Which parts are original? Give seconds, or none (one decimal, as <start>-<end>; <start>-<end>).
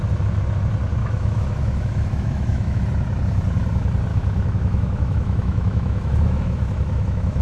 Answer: 0.0-1.0; 2.8-4.1